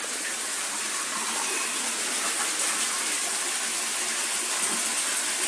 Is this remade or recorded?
recorded